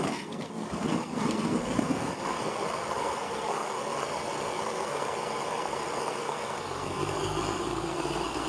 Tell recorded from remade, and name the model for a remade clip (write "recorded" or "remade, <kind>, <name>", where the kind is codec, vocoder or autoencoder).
remade, codec, SNAC